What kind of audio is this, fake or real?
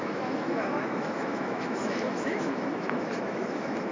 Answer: fake